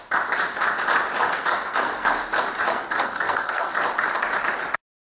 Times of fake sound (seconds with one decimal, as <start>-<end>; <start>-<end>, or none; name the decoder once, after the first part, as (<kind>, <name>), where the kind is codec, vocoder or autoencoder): 1.2-2.2 (codec, SNAC); 2.7-3.7